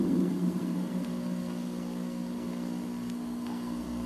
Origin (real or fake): fake